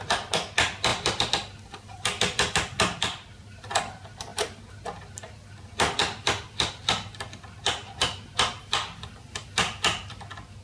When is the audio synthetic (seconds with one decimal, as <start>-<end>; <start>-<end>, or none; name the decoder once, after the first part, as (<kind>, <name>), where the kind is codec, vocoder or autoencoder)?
4.3-4.8 (vocoder, BigVGAN v2)